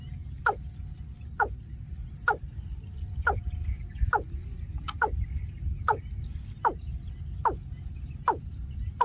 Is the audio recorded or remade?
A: recorded